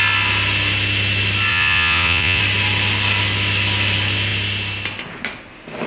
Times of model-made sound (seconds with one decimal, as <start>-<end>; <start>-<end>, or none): 1.5-2.4